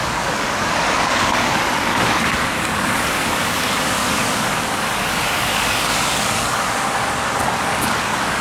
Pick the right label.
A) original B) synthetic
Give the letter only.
B